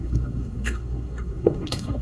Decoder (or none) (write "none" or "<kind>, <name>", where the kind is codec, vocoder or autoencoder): codec, SNAC